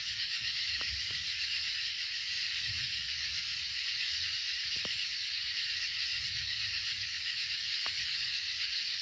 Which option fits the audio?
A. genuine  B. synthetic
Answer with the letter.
B